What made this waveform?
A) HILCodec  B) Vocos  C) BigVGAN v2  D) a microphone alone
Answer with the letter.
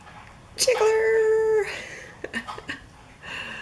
D